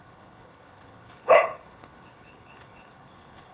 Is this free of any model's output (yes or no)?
no